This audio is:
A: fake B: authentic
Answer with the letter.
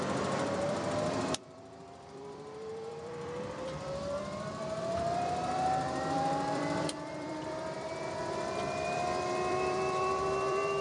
A